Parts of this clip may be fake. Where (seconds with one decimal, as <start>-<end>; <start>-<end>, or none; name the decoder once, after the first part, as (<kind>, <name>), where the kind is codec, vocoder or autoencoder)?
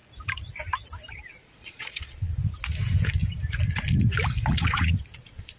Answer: 1.1-2.3 (vocoder, Vocos); 4.5-5.6